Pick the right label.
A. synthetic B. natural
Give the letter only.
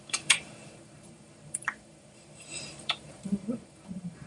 A